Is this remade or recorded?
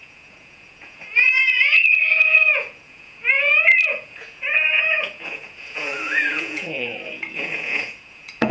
remade